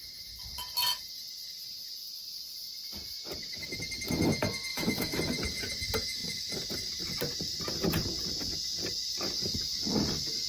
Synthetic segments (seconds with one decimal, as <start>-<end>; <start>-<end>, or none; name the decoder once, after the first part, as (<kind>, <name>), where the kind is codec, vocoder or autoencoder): 4.7-5.2 (autoencoder, DAC-VAE)